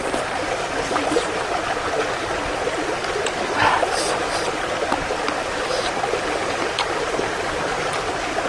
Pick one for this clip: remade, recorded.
recorded